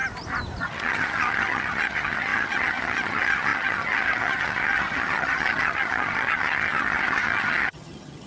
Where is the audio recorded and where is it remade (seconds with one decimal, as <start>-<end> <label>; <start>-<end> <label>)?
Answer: 0.0-0.6 recorded; 0.6-8.3 remade